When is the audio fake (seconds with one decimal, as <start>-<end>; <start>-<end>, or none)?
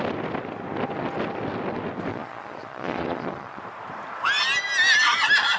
2.1-3.6